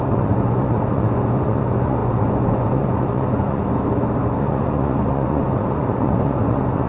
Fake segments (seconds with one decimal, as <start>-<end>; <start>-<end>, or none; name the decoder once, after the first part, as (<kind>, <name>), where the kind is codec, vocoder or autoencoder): 0.0-3.6 (vocoder, Vocos); 4.4-6.9